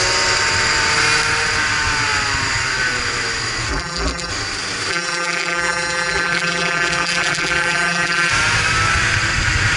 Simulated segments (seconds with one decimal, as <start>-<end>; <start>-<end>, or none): 3.7-4.3; 4.9-8.3